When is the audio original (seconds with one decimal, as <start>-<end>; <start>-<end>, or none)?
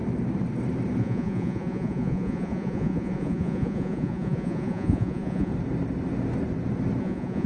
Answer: 0.0-1.0; 5.5-7.0